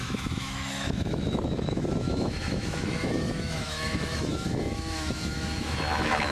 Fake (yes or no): yes